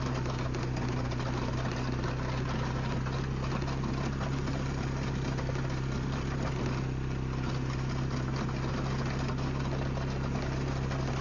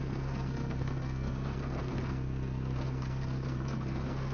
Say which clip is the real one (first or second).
first